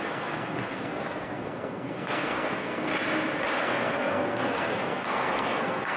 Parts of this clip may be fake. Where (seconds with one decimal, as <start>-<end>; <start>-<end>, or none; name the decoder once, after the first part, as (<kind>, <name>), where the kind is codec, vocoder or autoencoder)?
0.0-2.9 (codec, SNAC); 3.6-6.0